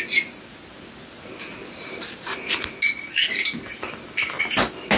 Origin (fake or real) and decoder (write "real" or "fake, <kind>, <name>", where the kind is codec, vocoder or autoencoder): real